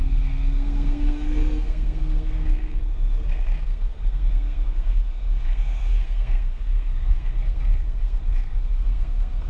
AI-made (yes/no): yes